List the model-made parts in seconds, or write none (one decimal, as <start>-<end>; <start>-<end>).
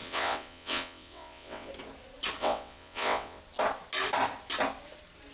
0.0-1.7; 2.4-3.4